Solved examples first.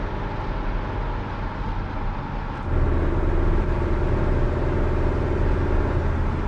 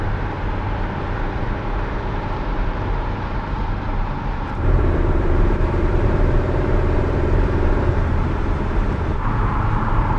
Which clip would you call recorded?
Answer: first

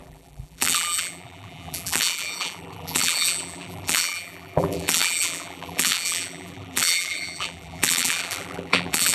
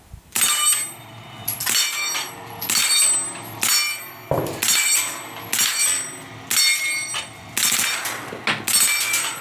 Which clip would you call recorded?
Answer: second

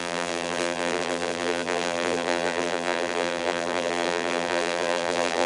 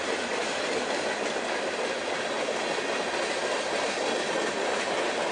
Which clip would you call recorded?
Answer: second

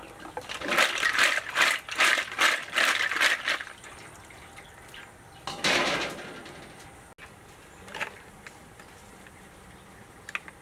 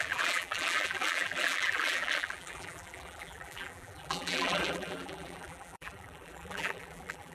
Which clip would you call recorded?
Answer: first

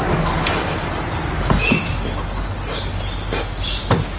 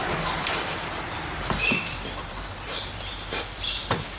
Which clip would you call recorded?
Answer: first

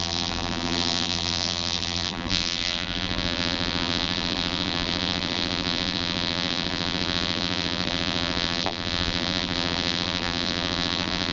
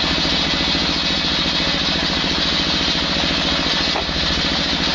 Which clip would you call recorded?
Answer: second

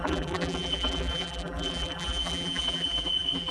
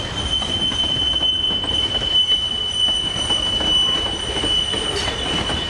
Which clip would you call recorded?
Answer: second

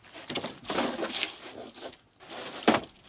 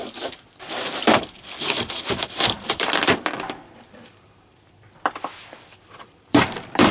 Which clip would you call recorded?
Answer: first